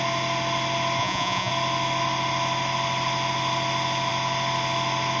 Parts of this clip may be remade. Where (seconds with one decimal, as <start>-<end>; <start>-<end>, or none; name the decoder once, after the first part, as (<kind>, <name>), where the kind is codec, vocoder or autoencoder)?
1.0-1.5 (vocoder, Vocos)